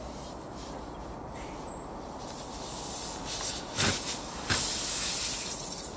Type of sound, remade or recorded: recorded